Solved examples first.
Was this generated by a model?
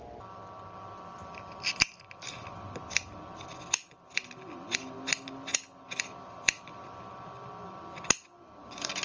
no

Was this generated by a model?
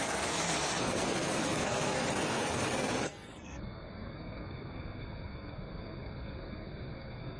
yes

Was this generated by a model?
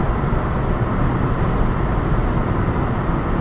no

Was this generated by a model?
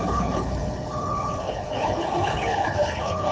yes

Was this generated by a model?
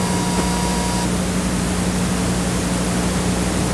no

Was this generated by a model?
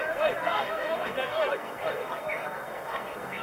yes